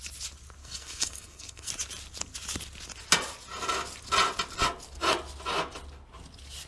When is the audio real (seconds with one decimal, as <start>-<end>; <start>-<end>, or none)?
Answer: 0.0-0.6; 1.7-6.7